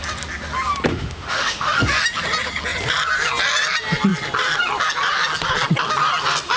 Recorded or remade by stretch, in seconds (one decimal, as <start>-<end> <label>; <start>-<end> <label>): 0.0-0.9 recorded; 0.9-1.7 remade; 1.7-6.6 recorded

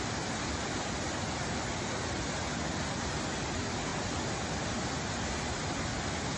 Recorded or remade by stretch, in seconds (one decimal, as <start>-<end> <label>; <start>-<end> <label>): 0.0-6.4 recorded